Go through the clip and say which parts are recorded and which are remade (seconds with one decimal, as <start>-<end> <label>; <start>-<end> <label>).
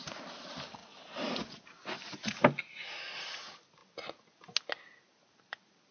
0.0-5.9 recorded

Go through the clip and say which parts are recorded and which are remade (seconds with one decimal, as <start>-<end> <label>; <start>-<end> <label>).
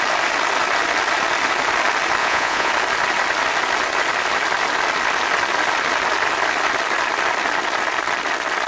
0.0-2.2 recorded; 2.2-2.7 remade; 2.7-8.7 recorded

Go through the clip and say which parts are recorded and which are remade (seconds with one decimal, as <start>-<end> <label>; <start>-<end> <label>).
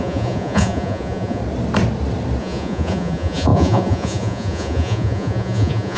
0.0-1.4 remade; 1.4-2.4 recorded; 2.4-6.0 remade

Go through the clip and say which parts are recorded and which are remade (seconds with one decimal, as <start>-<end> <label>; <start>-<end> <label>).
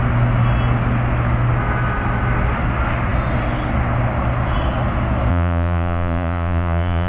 0.0-5.3 recorded; 5.3-7.1 remade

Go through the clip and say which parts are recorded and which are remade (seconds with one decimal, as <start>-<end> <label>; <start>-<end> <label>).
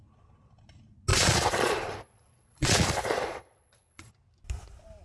0.0-1.1 recorded; 1.1-4.1 remade; 4.1-5.0 recorded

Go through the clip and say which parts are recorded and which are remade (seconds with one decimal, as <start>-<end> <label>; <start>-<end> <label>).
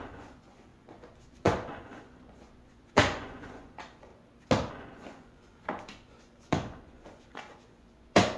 0.0-4.1 remade; 4.1-4.7 recorded; 4.7-8.4 remade